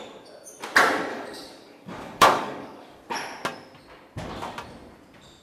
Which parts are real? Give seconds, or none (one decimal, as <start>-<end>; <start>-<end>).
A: 0.0-1.1; 3.0-5.4